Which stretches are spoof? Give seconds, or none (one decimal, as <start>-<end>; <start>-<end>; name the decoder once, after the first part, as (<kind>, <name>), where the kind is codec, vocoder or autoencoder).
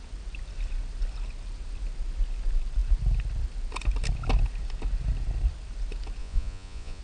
6.2-7.0 (vocoder, Vocos)